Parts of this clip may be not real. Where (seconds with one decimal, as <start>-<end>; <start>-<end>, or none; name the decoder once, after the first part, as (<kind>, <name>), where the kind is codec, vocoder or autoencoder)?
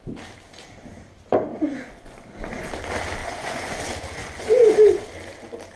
1.5-2.7 (vocoder, Vocos); 3.2-3.8; 4.2-5.0